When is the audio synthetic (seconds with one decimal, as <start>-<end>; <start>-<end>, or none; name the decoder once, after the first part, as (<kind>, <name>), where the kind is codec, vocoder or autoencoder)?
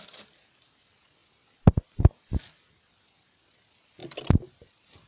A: none